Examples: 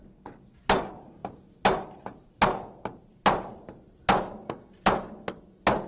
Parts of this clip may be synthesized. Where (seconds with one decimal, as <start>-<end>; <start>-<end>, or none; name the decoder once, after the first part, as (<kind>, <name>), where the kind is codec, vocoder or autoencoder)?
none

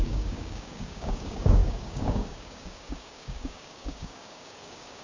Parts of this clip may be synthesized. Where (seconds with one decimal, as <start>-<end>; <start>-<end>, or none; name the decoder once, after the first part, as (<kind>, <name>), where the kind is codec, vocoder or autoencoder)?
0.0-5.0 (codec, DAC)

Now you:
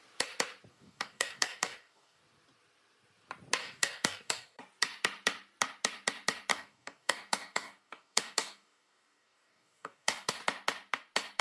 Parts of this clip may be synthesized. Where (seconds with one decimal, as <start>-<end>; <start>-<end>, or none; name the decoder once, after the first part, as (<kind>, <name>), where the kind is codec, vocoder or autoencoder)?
0.7-2.2 (codec, DAC); 3.6-4.6; 6.5-10.3

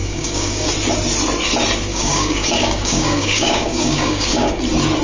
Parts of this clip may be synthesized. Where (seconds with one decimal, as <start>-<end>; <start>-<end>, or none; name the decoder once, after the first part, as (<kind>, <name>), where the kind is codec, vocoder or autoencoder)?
0.0-0.7 (codec, DAC); 1.9-4.5

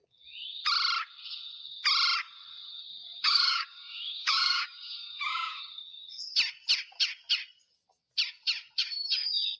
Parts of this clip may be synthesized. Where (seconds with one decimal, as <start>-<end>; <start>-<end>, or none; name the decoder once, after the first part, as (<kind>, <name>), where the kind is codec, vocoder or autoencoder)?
2.9-5.6 (codec, DAC)

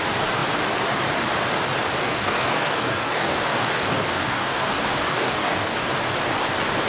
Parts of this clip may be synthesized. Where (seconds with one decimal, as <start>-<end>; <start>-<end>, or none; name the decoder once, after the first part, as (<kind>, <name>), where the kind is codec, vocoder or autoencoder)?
2.0-5.9 (codec, DAC)

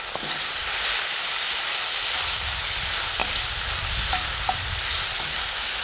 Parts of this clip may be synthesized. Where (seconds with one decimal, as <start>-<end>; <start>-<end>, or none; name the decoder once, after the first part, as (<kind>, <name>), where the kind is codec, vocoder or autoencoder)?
none

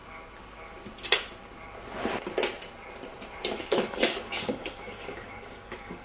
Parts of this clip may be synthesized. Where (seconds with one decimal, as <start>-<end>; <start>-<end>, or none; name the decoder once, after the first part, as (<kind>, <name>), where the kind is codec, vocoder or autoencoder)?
3.6-6.0 (codec, DAC)